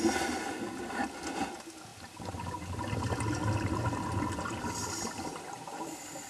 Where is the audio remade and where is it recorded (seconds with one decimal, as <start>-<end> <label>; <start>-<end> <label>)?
0.0-6.3 recorded